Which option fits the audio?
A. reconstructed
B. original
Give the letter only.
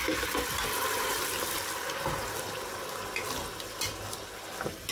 B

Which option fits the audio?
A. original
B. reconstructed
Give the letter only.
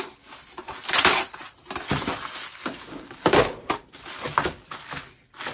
A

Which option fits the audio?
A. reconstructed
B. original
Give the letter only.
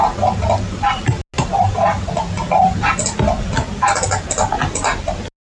B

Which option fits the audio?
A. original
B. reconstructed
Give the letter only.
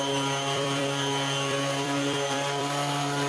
B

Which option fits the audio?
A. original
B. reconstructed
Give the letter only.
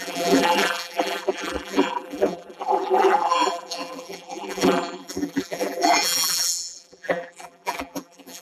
B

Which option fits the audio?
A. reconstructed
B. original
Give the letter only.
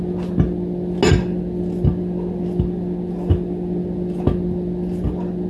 B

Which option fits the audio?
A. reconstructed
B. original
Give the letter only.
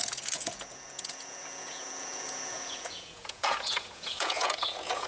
A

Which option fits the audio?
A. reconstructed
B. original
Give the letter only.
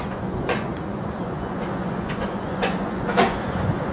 A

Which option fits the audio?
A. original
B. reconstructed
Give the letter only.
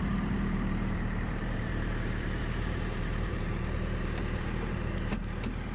B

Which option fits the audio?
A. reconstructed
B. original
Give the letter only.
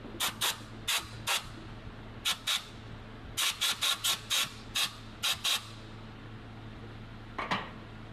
B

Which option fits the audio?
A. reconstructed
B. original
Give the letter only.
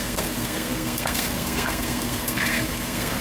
A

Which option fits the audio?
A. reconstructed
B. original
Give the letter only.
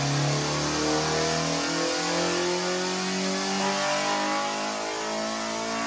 B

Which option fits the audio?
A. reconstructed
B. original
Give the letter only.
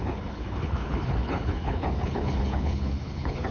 A